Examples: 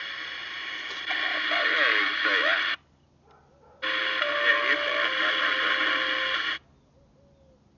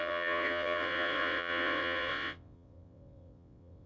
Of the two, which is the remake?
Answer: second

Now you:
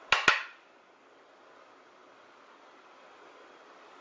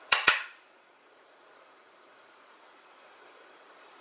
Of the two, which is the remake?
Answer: second